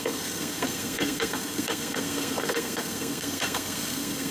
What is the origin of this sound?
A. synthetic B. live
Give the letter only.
A